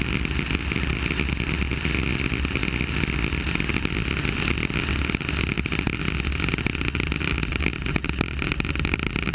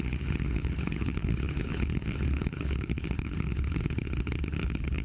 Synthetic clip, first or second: second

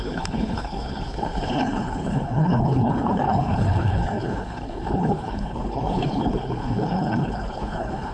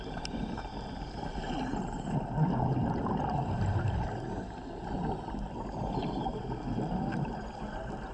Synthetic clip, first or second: first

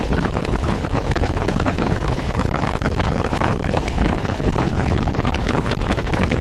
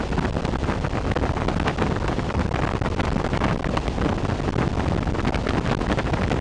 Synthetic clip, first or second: first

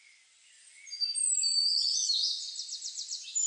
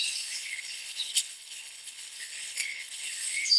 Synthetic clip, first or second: second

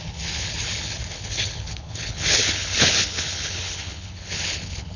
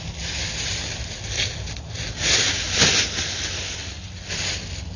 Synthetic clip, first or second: first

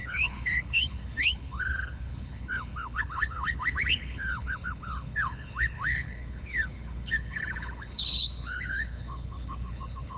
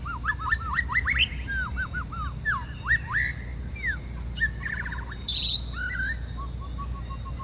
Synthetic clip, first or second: first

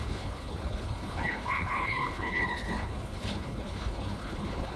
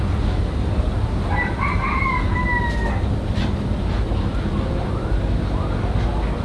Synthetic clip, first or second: first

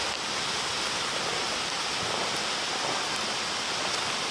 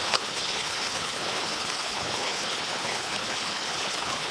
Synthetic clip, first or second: second